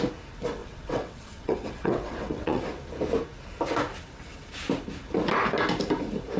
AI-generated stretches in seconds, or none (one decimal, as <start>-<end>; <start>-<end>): 0.6-2.6